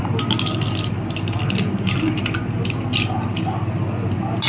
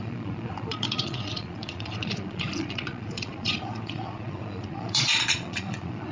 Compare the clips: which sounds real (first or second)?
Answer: first